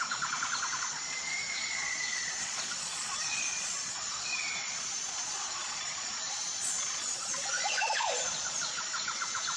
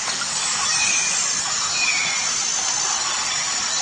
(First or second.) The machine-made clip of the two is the first